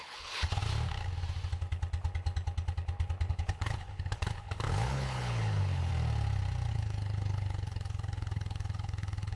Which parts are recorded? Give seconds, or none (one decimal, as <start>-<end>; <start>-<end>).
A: 0.6-3.3; 5.9-6.7